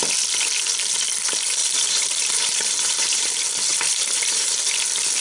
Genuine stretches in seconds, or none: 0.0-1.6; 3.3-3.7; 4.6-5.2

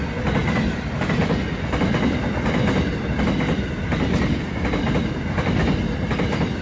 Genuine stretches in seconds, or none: 0.0-6.6